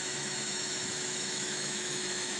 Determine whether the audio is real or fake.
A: fake